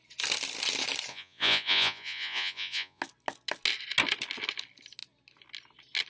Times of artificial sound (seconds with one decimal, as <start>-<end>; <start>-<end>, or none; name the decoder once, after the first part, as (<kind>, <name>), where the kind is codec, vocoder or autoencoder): 1.1-3.0 (vocoder, Vocos)